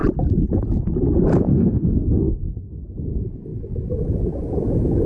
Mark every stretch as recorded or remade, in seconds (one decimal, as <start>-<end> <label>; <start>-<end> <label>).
0.0-1.5 recorded; 1.5-2.8 remade; 2.8-5.1 recorded